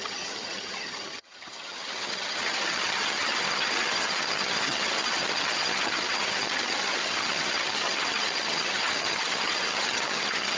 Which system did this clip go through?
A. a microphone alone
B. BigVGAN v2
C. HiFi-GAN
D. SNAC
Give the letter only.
C